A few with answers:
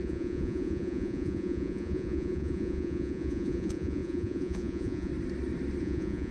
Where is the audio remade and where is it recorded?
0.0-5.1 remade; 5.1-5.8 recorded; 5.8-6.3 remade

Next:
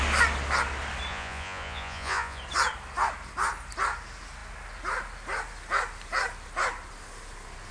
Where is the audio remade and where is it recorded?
0.0-1.1 recorded; 1.1-2.4 remade; 2.4-7.7 recorded